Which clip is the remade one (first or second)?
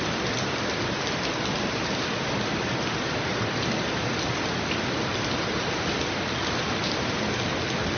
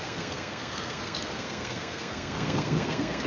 second